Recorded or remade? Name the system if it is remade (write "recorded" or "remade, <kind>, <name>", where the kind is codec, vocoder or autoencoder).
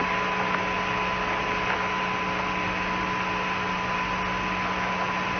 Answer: recorded